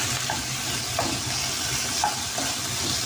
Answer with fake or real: real